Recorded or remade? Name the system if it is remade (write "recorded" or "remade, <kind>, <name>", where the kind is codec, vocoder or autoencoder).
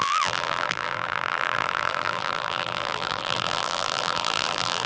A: remade, vocoder, BigVGAN v2